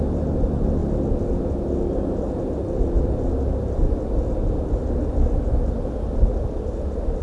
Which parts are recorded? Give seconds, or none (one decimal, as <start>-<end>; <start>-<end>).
0.0-7.2